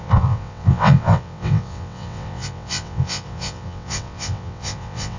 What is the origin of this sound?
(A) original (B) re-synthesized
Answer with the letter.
B